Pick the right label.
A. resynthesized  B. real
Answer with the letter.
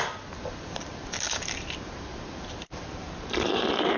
B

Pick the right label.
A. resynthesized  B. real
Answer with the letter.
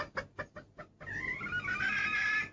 B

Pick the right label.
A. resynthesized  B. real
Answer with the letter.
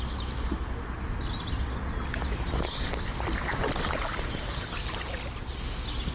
B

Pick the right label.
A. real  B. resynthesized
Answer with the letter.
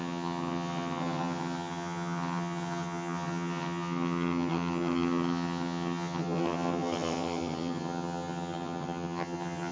B